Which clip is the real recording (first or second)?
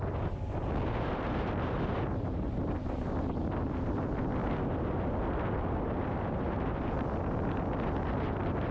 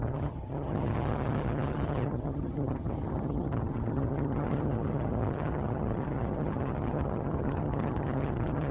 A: first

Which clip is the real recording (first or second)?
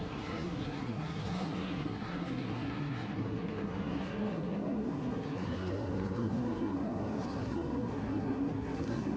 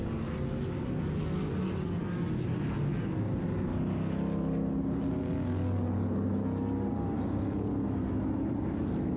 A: second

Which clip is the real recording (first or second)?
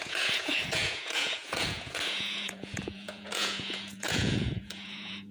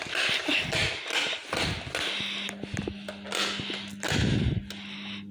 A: second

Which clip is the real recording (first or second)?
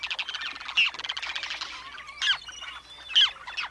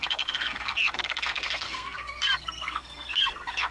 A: first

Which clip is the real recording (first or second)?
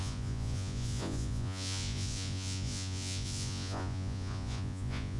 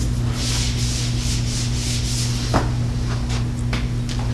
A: second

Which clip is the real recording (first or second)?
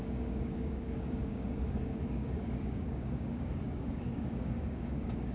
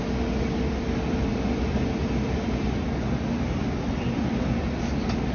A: second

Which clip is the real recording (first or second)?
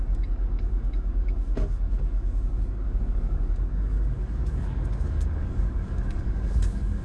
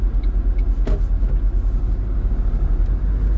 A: second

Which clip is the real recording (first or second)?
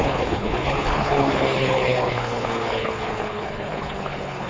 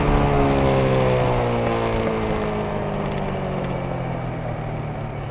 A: second